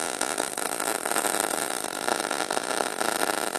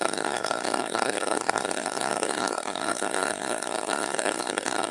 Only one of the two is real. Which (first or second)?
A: first